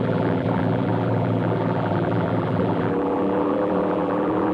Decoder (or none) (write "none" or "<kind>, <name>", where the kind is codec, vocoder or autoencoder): vocoder, BigVGAN v2